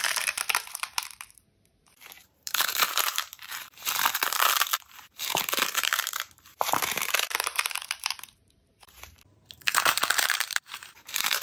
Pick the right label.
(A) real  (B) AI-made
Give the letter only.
B